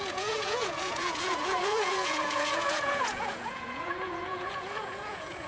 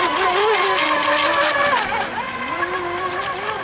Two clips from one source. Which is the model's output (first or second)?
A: first